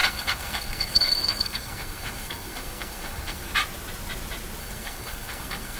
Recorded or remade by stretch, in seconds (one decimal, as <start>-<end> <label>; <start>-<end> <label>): 0.0-3.5 remade; 3.5-4.6 recorded; 4.6-5.8 remade